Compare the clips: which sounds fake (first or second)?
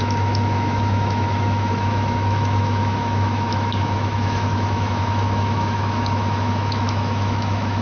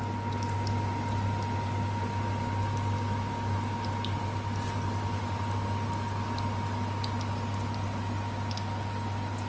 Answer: first